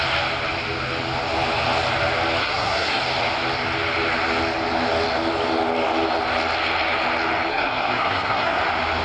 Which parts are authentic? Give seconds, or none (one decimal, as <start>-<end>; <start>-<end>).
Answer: 0.0-2.4; 3.0-7.5; 8.6-9.0